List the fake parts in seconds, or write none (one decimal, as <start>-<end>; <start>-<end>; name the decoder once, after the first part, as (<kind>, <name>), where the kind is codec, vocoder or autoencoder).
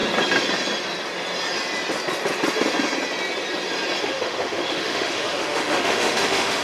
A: 4.0-6.6 (autoencoder, DAC-VAE)